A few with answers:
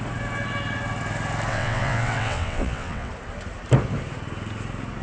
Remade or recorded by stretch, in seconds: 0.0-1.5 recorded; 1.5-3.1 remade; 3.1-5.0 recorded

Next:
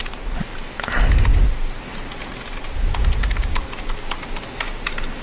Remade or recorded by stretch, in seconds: 0.0-5.2 recorded